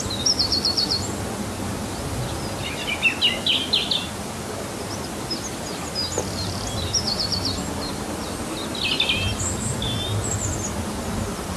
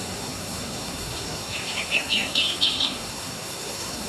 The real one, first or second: first